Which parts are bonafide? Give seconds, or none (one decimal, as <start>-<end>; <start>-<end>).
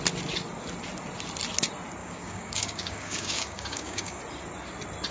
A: 0.0-2.0; 4.2-5.1